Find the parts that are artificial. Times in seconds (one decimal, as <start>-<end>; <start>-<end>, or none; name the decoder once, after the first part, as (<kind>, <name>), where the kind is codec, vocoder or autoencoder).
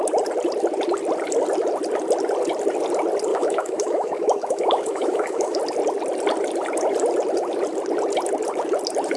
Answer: 3.3-5.6 (autoencoder, DAC-VAE)